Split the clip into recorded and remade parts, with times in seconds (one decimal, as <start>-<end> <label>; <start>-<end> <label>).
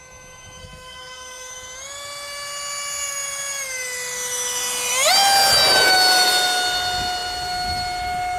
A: 0.0-0.6 recorded; 0.6-1.5 remade; 1.5-8.4 recorded